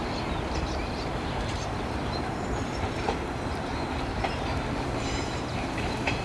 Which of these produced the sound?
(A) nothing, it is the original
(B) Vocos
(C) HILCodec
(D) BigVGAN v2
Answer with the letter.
D